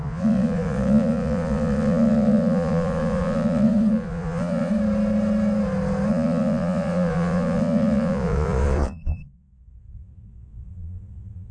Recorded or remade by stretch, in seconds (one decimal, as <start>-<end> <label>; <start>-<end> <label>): 0.0-4.7 remade; 4.7-6.1 recorded; 6.1-11.5 remade